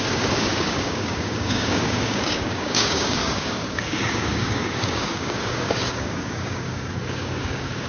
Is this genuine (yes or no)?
no